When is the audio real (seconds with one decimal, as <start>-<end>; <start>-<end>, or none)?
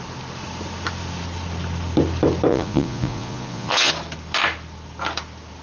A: 0.0-2.5; 3.9-5.6